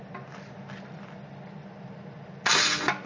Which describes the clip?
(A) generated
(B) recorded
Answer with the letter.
B